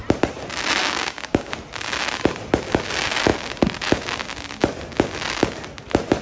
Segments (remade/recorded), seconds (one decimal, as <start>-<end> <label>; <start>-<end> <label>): 0.0-0.8 recorded; 0.8-1.5 remade; 1.5-6.2 recorded